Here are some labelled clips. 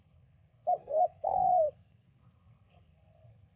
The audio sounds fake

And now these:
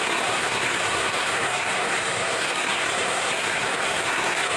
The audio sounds fake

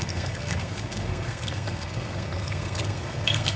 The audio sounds fake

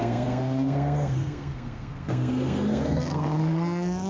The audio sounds fake